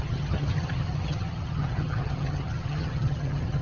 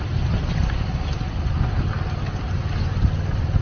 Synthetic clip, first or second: first